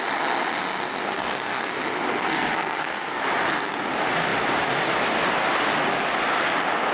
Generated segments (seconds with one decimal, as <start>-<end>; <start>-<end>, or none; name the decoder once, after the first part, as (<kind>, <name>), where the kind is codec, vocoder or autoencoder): 1.1-1.7 (codec, SNAC); 2.1-3.2